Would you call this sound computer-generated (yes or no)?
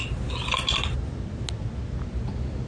no